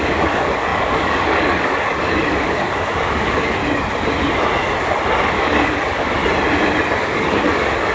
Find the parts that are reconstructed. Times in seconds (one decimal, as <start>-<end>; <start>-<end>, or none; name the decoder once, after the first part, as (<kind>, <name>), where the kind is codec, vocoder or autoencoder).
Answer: 0.0-3.6 (codec, DAC); 5.3-6.2; 7.0-7.9